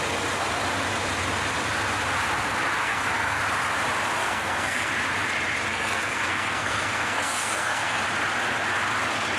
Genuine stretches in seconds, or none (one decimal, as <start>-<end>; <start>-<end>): 0.0-2.8; 3.4-4.2; 4.9-5.7; 8.0-9.4